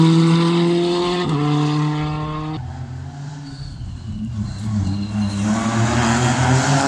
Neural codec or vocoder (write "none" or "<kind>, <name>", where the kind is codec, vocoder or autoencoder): none